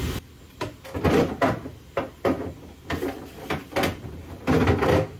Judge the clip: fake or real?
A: real